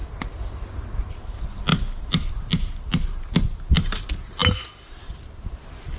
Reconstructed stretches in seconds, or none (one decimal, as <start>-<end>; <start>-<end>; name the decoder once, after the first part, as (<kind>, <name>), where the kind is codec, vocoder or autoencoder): 1.7-2.3 (vocoder, BigVGAN v2)